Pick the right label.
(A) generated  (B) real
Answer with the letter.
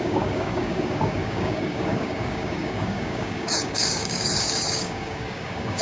A